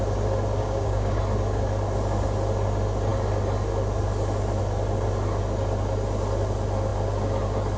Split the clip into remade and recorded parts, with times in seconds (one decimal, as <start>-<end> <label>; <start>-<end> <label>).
0.0-0.6 recorded; 0.6-1.2 remade; 1.2-7.8 recorded